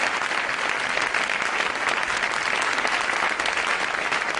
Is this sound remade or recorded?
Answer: recorded